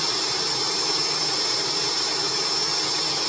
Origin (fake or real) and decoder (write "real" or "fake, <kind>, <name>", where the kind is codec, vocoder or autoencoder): real